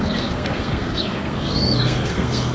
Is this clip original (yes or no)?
no